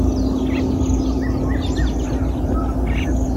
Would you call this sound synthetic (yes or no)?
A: no